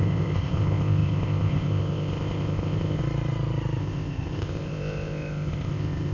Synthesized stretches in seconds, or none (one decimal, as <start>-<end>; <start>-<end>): 0.0-3.0; 3.8-6.1